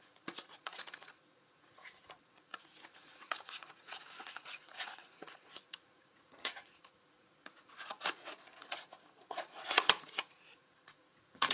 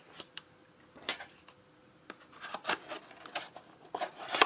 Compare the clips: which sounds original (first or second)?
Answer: second